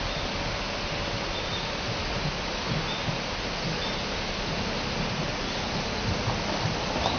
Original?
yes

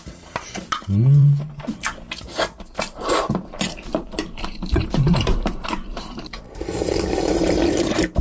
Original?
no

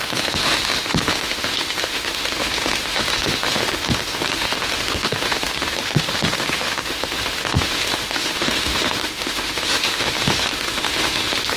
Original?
no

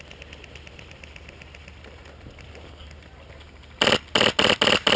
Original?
yes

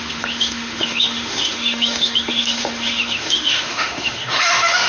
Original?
no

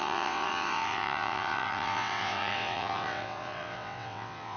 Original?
no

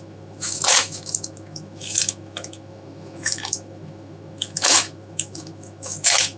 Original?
no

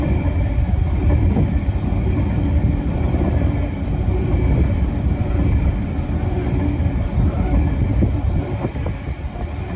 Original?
yes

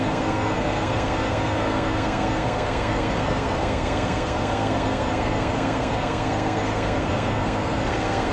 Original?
no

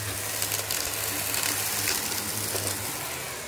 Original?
yes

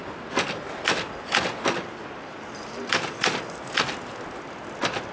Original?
yes